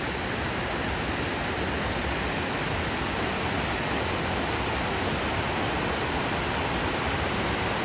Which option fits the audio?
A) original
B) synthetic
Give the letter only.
A